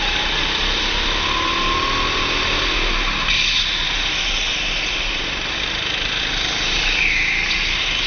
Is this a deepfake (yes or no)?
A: no